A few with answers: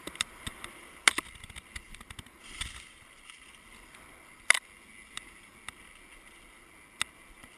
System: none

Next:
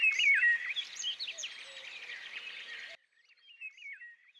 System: none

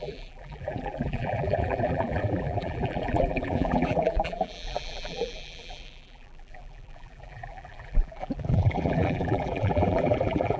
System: vocoder, BigVGAN v2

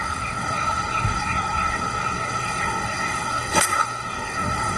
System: codec, SNAC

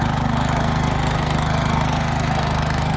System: codec, SNAC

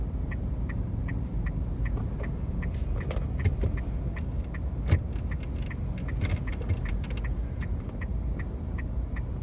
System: none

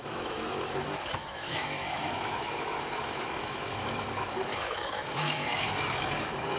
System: autoencoder, DAC-VAE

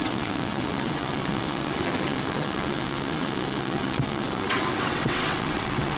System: vocoder, WaveNeXt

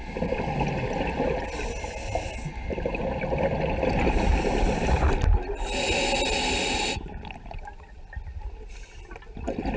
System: none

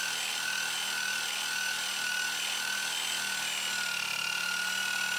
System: none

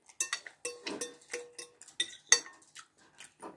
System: none